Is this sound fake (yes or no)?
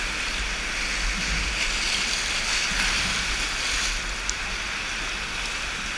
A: no